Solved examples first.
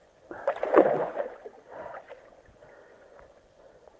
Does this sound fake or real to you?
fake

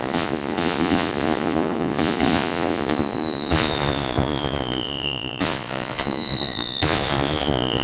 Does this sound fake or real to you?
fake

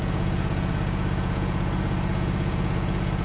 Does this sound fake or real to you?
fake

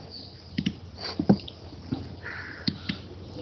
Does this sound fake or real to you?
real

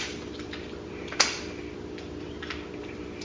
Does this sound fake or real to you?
real